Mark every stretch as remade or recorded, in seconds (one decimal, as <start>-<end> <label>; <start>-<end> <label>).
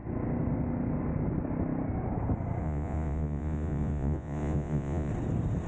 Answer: 0.0-2.6 recorded; 2.6-5.1 remade; 5.1-5.7 recorded